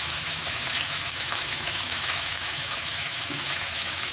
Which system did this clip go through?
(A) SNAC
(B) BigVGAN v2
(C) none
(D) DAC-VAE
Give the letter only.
D